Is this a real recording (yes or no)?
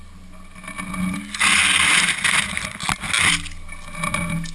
yes